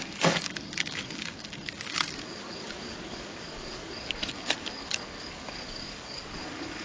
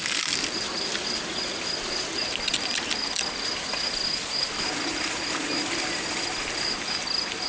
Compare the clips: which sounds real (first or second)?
second